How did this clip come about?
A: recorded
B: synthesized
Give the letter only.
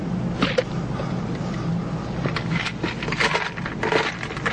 A